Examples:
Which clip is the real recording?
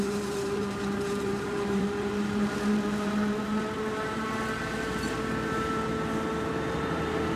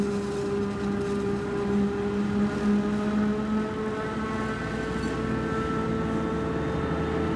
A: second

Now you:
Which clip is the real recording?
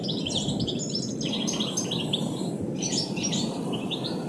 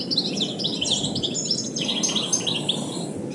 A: second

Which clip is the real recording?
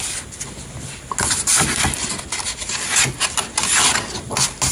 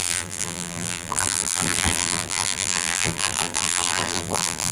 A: first